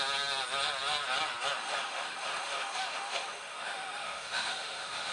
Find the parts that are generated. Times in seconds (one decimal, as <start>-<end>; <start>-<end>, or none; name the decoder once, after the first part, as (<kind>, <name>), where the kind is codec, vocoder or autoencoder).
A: 1.6-5.1 (autoencoder, DAC-VAE)